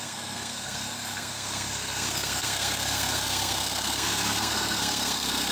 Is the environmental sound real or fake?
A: fake